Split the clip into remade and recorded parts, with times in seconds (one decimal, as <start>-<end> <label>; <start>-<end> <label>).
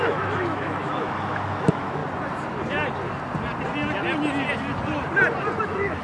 0.0-2.0 remade; 2.0-5.6 recorded; 5.6-6.0 remade